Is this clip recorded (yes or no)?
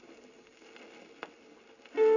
yes